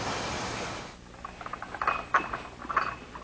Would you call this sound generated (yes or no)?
no